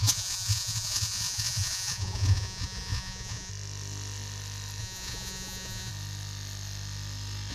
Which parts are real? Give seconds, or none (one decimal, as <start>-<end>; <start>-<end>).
3.5-4.8; 5.9-7.5